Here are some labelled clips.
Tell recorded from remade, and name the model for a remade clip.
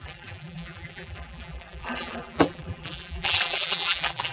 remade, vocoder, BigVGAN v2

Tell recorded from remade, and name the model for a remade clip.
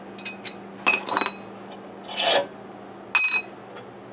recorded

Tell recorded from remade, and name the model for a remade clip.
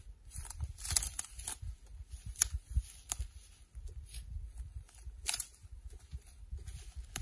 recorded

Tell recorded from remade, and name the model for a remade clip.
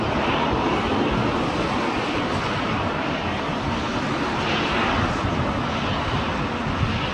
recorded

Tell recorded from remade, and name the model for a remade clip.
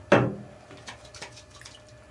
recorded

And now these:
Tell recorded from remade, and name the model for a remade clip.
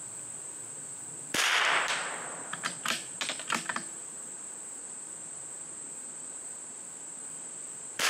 remade, vocoder, BigVGAN v2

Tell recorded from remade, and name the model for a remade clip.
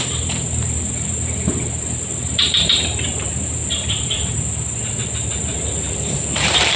remade, vocoder, BigVGAN v2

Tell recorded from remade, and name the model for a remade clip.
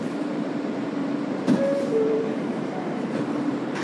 remade, vocoder, BigVGAN v2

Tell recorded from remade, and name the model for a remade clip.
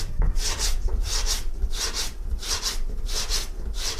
remade, vocoder, BigVGAN v2